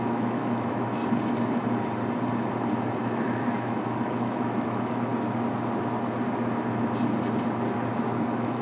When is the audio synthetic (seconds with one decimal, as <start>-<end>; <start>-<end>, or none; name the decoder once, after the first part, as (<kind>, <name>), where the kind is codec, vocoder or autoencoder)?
0.0-1.0 (autoencoder, DAC-VAE); 3.0-5.1; 7.9-8.6